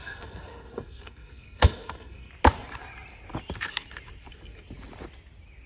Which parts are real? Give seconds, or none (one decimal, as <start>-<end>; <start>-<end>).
2.3-5.7